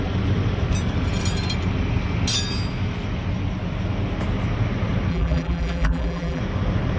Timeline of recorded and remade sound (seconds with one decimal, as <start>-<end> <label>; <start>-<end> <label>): 0.0-5.1 recorded; 5.1-6.4 remade; 6.4-7.0 recorded